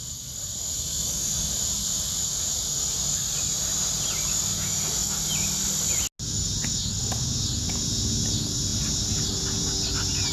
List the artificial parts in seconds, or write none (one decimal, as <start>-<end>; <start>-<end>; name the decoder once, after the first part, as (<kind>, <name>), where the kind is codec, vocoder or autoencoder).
8.7-9.3 (vocoder, BigVGAN v2)

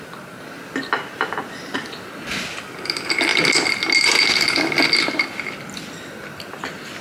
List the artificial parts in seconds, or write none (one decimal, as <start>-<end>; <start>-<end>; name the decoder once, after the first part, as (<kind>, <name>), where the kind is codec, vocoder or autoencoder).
none

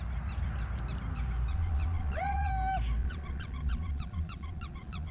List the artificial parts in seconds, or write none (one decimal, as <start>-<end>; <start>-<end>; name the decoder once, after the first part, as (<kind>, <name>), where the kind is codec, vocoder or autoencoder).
1.5-2.5 (vocoder, Vocos); 3.0-5.1

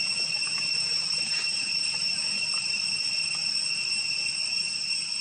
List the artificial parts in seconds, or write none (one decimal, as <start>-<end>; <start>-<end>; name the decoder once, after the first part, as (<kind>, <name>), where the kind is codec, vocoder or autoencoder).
0.7-1.7 (vocoder, BigVGAN v2)

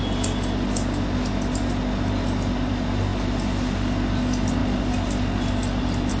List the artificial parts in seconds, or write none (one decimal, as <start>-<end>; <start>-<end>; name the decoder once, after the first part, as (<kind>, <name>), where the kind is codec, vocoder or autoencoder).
none

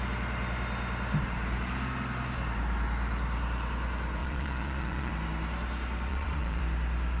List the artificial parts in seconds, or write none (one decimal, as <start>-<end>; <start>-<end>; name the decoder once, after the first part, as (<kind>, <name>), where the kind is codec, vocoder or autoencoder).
4.2-5.1 (vocoder, Vocos); 6.1-6.6

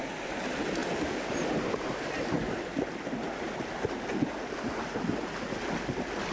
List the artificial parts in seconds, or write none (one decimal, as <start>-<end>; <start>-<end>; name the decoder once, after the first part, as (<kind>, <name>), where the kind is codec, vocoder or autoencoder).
none

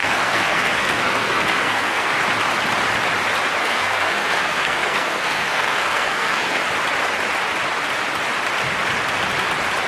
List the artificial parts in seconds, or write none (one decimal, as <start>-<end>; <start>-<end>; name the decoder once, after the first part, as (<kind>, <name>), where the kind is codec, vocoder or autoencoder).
0.0-2.1 (codec, SNAC); 3.6-6.6